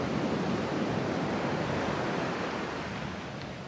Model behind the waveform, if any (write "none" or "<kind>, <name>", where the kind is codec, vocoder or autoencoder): none